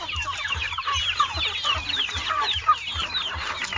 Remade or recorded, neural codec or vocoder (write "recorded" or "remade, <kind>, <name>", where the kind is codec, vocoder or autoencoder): recorded